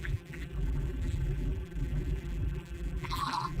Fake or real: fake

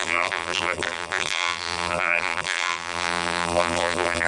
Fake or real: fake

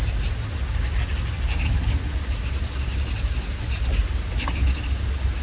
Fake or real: real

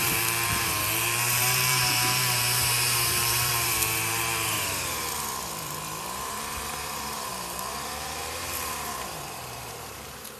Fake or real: fake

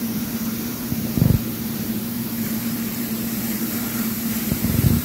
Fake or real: fake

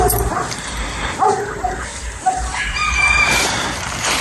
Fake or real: fake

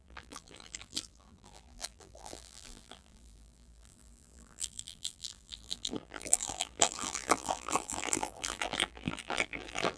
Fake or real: fake